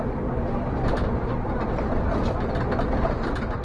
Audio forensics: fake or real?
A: real